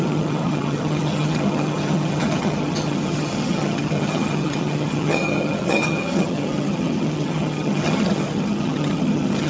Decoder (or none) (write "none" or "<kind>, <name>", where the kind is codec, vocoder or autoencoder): vocoder, HiFi-GAN